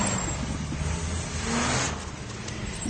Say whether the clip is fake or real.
real